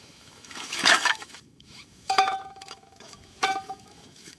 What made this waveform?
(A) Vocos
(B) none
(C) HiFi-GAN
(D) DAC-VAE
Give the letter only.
D